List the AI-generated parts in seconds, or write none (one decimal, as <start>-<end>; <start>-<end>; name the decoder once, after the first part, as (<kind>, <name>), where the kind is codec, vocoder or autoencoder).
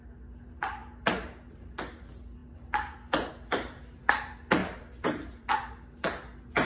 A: 4.6-5.7 (vocoder, BigVGAN v2)